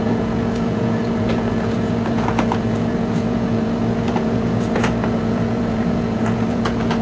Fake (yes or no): yes